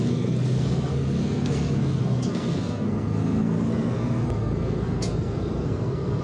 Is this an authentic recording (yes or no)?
no